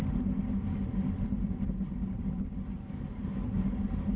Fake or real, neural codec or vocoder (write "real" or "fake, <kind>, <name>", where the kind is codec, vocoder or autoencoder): real